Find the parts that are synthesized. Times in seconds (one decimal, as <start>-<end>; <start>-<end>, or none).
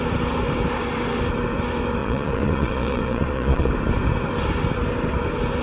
2.0-3.7